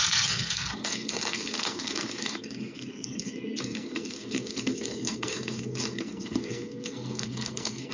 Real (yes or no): no